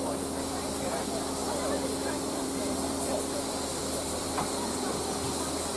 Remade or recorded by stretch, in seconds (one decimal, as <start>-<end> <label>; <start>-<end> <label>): 0.0-1.4 recorded; 1.4-4.4 remade; 4.4-5.8 recorded